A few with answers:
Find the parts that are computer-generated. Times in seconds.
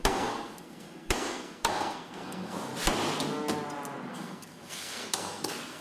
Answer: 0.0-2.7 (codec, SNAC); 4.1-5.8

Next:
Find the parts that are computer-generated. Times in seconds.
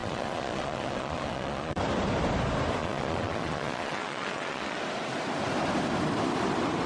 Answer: 0.0-1.8 (vocoder, Vocos); 2.8-4.8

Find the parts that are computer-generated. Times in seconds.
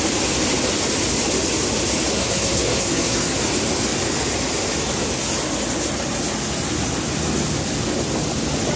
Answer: 2.1-3.4 (codec, SNAC)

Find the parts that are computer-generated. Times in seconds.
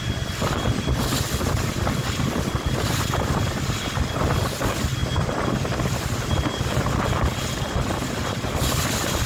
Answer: none